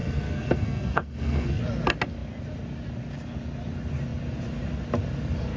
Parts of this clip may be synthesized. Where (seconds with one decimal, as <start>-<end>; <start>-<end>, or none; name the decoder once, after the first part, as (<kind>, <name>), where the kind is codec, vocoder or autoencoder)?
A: 0.0-1.6 (codec, SNAC)